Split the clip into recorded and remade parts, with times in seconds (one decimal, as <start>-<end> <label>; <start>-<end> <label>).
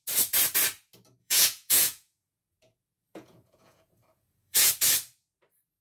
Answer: 0.0-1.2 recorded; 1.2-4.7 remade; 4.7-5.8 recorded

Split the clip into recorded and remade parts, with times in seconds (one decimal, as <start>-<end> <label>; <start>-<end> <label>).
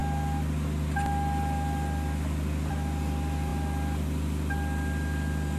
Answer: 0.0-5.6 recorded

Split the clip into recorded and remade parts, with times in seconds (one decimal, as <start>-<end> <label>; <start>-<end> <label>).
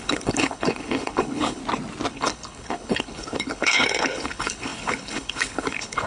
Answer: 0.0-1.6 remade; 1.6-2.1 recorded; 2.1-6.1 remade